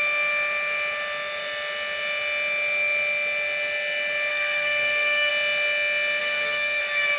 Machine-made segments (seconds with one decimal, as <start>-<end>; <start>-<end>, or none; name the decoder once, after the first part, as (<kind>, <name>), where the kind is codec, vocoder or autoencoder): 4.3-5.3 (codec, SNAC); 6.2-6.8

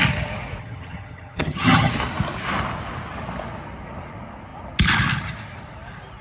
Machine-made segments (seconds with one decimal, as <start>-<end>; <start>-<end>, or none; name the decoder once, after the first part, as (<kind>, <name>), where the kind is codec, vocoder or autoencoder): 0.6-1.9 (vocoder, HiFi-GAN)

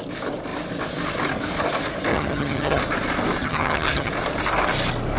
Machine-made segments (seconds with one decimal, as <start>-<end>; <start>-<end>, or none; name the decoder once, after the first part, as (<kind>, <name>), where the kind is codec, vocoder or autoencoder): 2.1-2.8 (vocoder, HiFi-GAN); 3.4-4.1

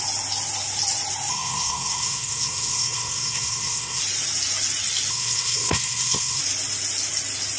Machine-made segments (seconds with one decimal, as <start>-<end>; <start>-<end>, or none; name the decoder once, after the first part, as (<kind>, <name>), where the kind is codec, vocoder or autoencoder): 1.3-4.0 (codec, SNAC); 5.1-6.4

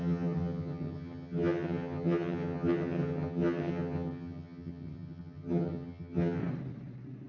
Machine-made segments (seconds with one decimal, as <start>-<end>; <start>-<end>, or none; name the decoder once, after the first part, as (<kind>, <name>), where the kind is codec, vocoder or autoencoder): 0.0-6.4 (vocoder, HiFi-GAN)

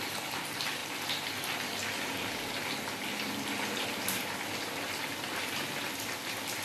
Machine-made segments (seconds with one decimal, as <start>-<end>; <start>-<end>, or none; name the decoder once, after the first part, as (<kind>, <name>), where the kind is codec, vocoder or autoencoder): none

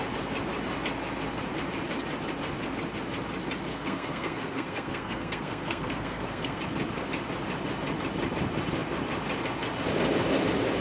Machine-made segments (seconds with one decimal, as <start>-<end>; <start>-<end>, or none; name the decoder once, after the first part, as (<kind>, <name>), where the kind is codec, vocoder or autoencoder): 3.7-6.6 (codec, SNAC)